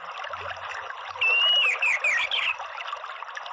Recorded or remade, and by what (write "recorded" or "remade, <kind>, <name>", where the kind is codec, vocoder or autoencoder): remade, vocoder, BigVGAN v2